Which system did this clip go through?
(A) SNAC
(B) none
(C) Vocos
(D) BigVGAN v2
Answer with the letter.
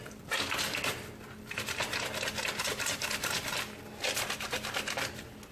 B